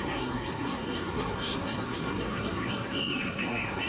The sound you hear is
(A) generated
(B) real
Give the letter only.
A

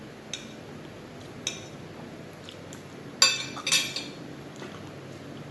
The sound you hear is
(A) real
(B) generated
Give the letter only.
A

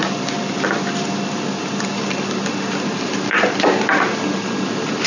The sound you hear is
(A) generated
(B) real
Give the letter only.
B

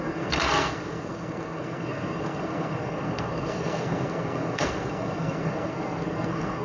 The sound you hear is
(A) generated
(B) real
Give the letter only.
A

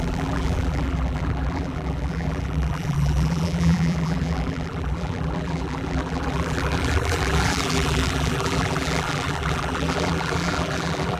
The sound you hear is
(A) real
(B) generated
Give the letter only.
B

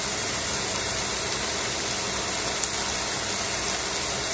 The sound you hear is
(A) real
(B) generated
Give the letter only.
A